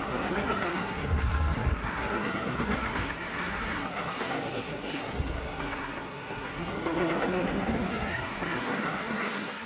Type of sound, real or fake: fake